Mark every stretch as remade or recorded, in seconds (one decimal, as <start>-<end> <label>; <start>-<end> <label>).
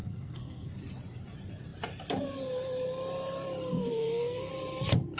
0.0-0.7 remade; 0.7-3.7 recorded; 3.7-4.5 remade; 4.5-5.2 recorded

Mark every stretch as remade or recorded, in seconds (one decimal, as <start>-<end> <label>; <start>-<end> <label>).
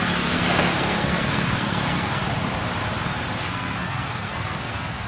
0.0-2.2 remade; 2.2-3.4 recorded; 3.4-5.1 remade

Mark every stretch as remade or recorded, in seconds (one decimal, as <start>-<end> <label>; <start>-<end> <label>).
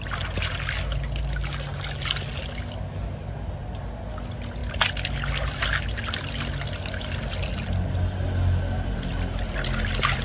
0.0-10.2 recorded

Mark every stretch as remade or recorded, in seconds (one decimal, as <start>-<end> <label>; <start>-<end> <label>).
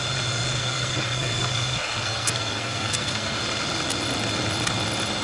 0.0-0.6 recorded; 0.6-3.4 remade; 3.4-5.2 recorded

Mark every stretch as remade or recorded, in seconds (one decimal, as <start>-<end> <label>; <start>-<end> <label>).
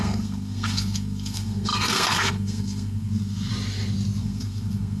0.0-3.5 remade; 3.5-4.2 recorded; 4.2-5.0 remade